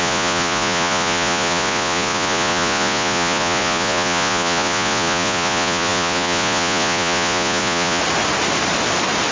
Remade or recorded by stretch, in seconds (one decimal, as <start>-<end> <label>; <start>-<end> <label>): 0.0-8.0 remade; 8.0-9.3 recorded